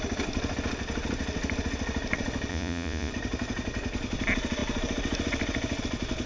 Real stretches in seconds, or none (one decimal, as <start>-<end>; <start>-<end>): 0.0-2.5; 3.1-6.3